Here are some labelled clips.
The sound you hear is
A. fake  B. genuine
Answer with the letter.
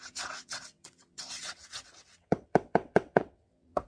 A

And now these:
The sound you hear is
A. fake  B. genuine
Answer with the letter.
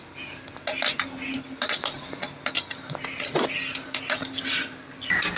B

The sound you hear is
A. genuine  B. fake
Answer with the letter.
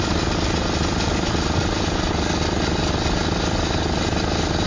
A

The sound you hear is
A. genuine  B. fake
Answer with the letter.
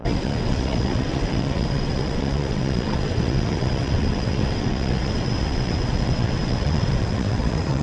B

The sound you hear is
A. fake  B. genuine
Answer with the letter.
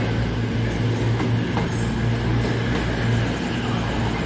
B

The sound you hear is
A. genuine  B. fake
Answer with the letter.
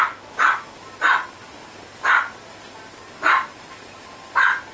A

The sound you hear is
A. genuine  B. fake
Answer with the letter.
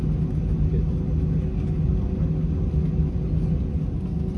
A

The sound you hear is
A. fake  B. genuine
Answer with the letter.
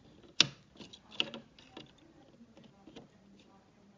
B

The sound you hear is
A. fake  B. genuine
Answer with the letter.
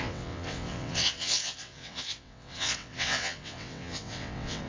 A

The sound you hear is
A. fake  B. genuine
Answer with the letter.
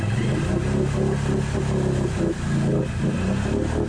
B